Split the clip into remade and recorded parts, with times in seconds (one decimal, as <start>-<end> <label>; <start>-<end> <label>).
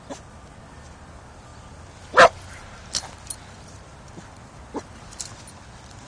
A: 0.0-6.1 recorded